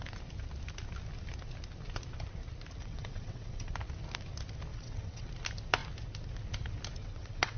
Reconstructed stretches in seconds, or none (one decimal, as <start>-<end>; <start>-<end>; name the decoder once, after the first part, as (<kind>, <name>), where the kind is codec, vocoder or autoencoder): 2.8-3.7 (vocoder, WaveNeXt); 4.7-5.3; 7.0-7.6